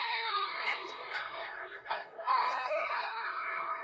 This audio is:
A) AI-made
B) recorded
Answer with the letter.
A